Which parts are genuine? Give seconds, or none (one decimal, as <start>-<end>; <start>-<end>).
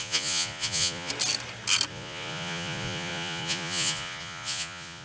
1.1-1.9